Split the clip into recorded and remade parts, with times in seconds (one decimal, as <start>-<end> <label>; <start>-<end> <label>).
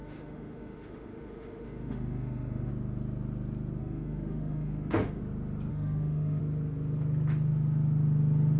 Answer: 0.0-2.7 remade; 2.7-3.8 recorded; 3.8-5.2 remade; 5.2-5.7 recorded; 5.7-6.4 remade; 6.4-8.6 recorded